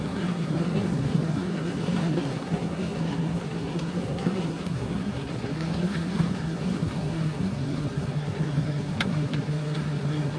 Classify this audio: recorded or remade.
remade